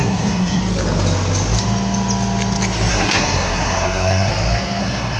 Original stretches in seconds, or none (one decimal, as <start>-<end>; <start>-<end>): 0.6-2.9; 4.3-4.8